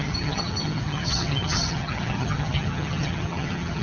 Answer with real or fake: fake